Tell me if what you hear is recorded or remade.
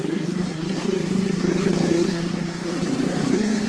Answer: remade